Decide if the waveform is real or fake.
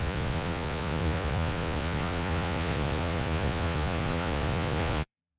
fake